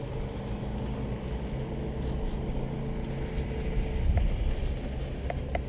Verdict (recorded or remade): recorded